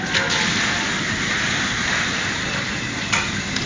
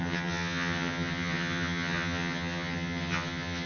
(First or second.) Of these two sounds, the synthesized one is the second